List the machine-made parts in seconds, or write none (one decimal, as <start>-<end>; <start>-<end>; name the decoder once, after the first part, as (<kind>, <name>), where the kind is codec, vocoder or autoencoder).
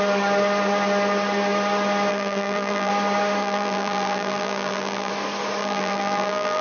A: 2.1-2.9 (vocoder, BigVGAN v2); 3.4-5.1; 5.6-6.6